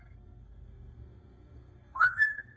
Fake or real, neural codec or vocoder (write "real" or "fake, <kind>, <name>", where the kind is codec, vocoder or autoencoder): fake, codec, SNAC